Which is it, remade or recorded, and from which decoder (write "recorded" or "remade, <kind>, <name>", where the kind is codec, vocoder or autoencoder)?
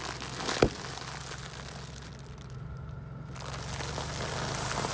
recorded